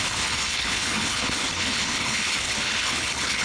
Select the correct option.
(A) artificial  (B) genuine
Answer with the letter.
A